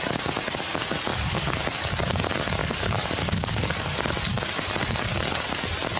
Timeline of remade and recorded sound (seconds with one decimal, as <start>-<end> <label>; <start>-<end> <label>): 0.0-1.1 recorded; 1.1-1.6 remade; 1.6-2.6 recorded; 2.6-4.1 remade; 4.1-6.0 recorded